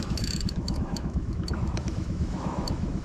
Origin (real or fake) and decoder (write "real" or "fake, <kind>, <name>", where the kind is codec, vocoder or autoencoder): fake, autoencoder, DAC-VAE